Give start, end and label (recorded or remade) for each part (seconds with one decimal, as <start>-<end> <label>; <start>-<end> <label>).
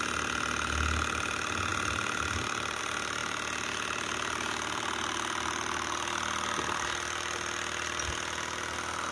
0.0-1.7 recorded; 1.7-2.8 remade; 2.8-9.1 recorded